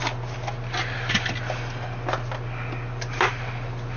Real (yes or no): yes